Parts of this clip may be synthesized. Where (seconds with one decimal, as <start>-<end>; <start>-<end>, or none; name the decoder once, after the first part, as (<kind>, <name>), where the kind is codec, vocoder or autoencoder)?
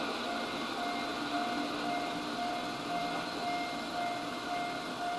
none